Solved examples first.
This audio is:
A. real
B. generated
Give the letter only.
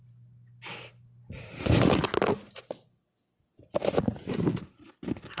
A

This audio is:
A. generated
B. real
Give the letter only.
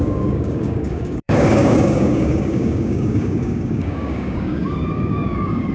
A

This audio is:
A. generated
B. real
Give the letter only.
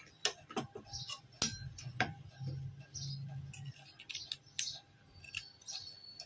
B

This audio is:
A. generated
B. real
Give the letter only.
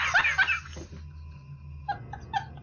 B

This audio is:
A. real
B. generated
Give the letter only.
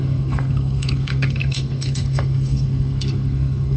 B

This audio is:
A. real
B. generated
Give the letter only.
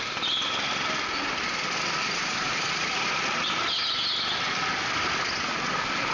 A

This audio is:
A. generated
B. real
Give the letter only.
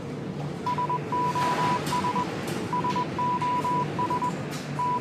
B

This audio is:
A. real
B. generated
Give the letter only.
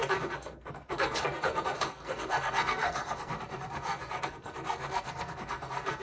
B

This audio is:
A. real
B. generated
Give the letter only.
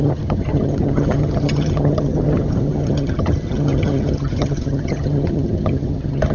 B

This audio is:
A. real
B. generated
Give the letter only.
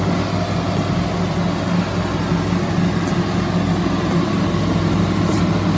A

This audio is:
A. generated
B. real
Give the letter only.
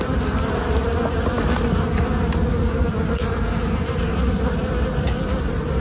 B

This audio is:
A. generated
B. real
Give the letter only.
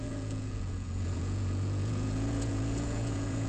A